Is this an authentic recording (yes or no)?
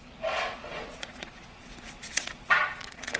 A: no